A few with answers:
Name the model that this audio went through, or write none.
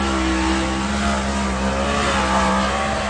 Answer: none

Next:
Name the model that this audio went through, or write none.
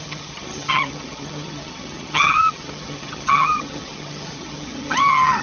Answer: vocoder, HiFi-GAN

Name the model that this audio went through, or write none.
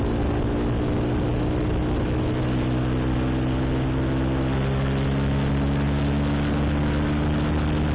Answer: none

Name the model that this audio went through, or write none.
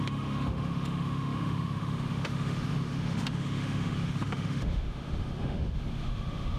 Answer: autoencoder, DAC-VAE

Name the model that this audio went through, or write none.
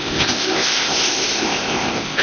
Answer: codec, ZipCodec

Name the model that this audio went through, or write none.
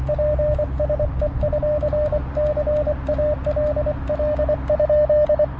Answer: none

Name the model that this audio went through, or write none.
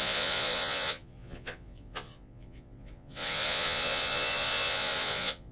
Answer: vocoder, Vocos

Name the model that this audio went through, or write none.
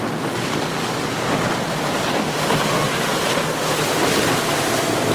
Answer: none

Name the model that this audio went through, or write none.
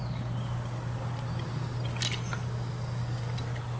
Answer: none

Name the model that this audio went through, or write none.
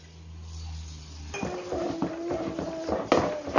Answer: none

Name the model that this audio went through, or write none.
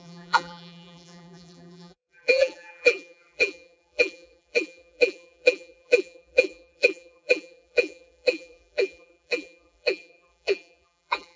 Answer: vocoder, BigVGAN v2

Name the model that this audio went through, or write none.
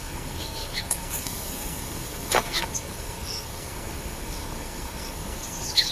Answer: codec, SNAC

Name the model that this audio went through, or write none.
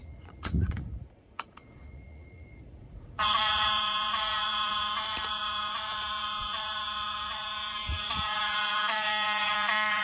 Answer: vocoder, Vocos